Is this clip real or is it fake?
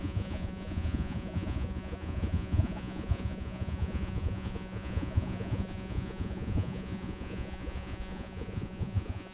fake